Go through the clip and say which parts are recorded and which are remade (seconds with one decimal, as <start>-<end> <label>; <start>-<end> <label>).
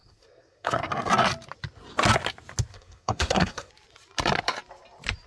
0.0-0.9 remade; 0.9-2.7 recorded; 2.7-3.7 remade; 3.7-5.3 recorded